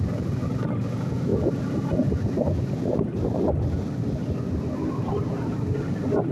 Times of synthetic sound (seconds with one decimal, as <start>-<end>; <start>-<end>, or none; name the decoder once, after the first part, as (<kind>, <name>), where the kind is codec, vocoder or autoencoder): 1.3-1.9 (vocoder, BigVGAN v2); 3.1-3.8